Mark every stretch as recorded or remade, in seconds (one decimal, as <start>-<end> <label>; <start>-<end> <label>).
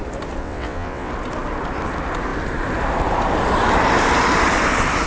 0.0-0.4 recorded; 0.4-1.1 remade; 1.1-5.1 recorded